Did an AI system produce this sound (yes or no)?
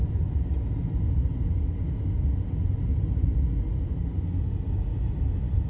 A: no